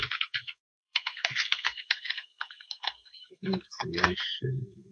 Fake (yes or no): yes